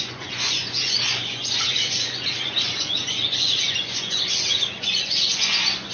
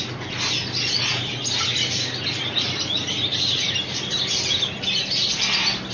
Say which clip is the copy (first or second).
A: first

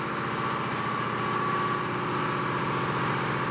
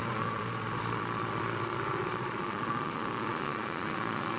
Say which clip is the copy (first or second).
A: second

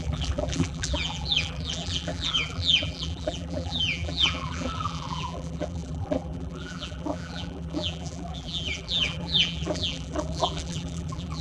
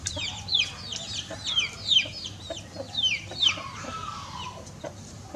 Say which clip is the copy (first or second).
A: first